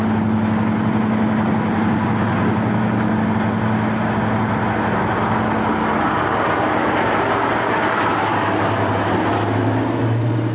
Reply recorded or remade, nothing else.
recorded